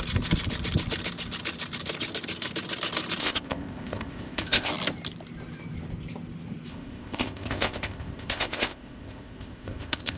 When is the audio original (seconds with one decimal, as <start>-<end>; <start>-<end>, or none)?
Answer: 0.0-3.2; 4.7-6.7